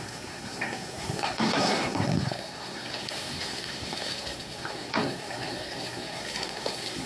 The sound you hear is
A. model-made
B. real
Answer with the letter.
A